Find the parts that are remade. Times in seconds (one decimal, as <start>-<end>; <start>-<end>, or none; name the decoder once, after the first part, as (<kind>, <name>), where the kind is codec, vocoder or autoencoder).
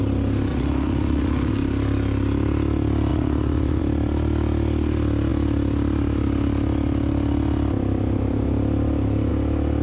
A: 0.5-1.5 (vocoder, Vocos); 3.1-3.8